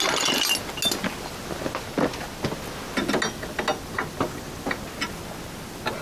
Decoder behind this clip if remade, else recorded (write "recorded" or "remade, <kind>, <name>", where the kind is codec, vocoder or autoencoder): recorded